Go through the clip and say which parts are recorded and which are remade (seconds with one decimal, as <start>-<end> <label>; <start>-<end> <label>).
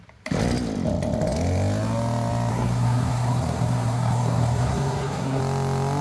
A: 0.0-2.5 recorded; 2.5-5.4 remade; 5.4-6.0 recorded